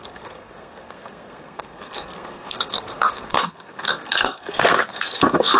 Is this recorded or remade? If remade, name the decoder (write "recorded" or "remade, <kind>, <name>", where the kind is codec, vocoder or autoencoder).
remade, codec, SNAC